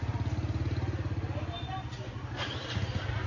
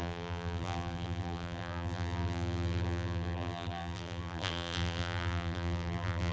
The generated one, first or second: second